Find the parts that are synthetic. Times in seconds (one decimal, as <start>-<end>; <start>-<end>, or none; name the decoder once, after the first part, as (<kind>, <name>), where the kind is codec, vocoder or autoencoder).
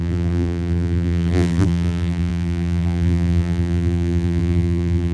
0.0-5.1 (vocoder, BigVGAN v2)